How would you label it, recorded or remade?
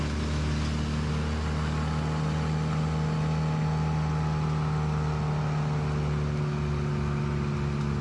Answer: recorded